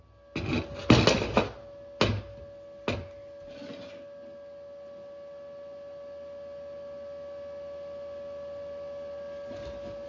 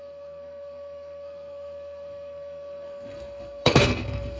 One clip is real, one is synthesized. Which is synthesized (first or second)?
second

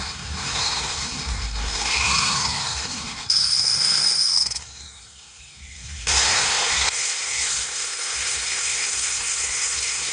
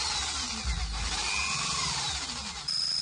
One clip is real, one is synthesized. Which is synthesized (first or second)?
first